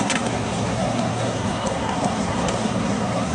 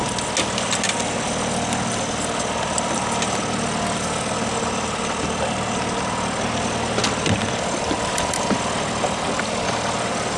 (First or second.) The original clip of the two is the second